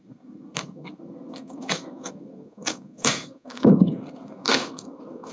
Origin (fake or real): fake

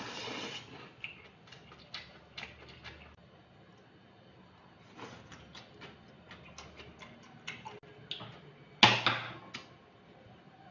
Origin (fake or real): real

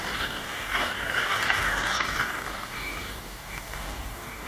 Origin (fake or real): fake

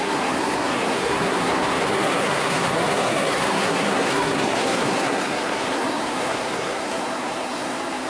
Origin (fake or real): fake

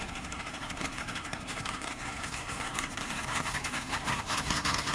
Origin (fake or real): fake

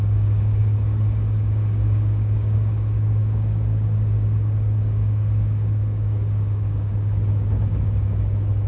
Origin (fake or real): fake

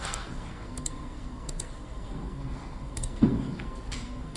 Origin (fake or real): fake